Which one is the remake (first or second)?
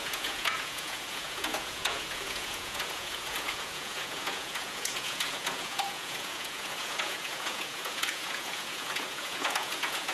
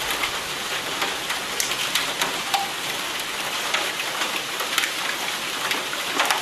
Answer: first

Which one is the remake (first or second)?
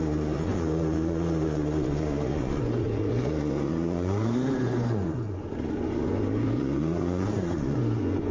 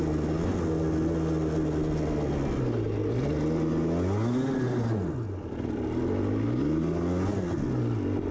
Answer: first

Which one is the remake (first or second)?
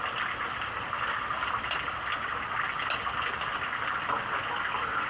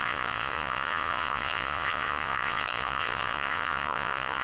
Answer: second